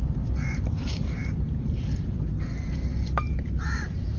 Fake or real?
fake